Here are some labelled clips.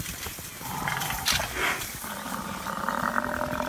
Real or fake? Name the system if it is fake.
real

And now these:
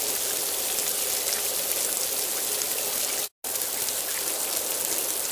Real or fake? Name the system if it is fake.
real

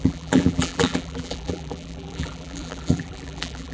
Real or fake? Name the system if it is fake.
fake, vocoder, BigVGAN v2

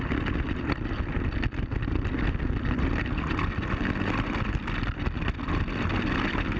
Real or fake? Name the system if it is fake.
real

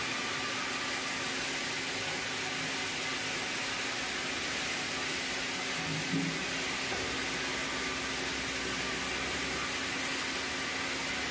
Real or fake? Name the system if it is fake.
real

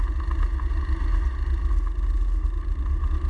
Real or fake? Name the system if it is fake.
real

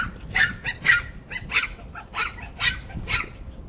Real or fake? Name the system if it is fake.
real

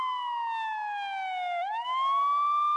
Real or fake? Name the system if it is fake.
real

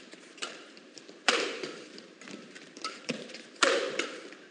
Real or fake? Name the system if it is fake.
fake, vocoder, BigVGAN v2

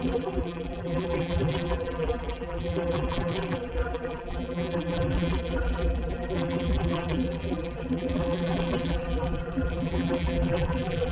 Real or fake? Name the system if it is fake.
fake, vocoder, BigVGAN v2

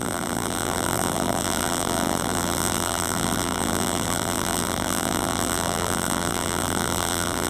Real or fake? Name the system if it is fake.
fake, vocoder, BigVGAN v2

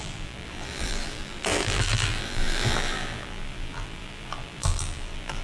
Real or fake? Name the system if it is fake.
fake, vocoder, BigVGAN v2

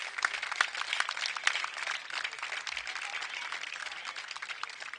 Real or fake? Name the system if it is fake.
real